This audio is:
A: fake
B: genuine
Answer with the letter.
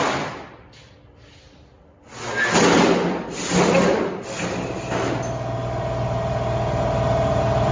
B